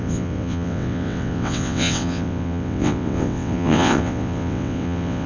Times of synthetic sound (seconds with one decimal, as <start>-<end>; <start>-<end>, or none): 0.0-5.3